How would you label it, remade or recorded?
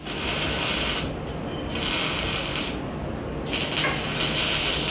recorded